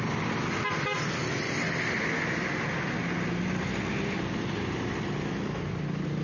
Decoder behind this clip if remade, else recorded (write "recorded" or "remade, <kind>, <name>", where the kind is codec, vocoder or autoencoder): recorded